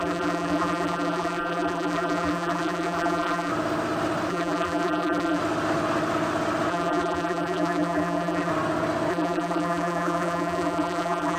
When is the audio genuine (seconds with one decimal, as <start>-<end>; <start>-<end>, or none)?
3.5-4.3; 5.4-6.7; 8.5-9.1